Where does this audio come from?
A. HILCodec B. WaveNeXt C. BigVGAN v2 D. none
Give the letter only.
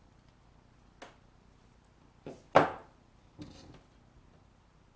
D